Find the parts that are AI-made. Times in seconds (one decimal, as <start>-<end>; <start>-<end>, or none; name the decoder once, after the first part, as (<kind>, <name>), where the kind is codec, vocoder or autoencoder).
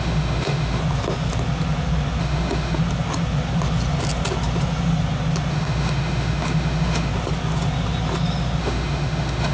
0.0-0.8 (autoencoder, DAC-VAE); 2.2-2.8; 5.5-7.1; 8.6-9.5